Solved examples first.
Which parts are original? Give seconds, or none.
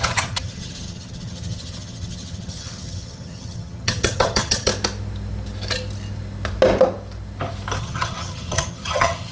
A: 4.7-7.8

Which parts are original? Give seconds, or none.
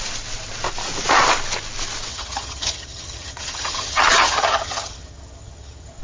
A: 0.0-2.1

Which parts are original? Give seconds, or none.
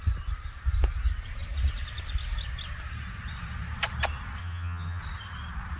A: 0.0-4.4; 5.0-5.8